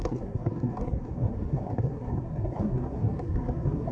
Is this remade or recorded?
remade